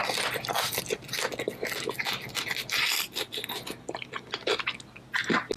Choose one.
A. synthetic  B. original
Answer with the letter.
B